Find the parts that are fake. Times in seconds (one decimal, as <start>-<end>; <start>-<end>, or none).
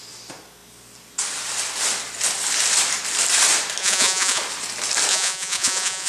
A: 3.8-4.4; 5.1-6.1